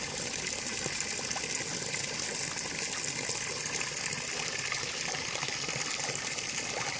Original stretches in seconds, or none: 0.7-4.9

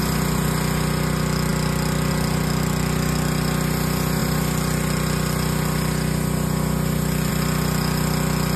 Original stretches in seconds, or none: 0.0-8.6

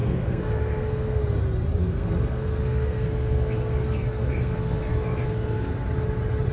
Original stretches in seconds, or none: 1.2-1.8; 5.7-6.5